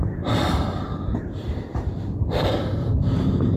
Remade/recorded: remade